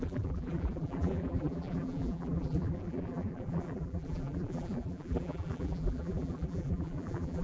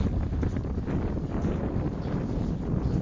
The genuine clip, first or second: second